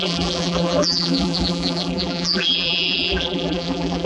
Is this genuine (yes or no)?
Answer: no